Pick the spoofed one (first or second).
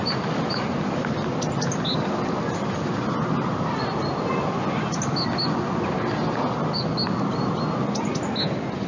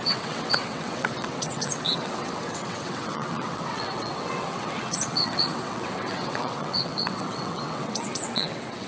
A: second